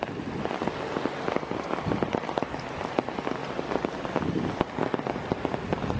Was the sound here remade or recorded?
recorded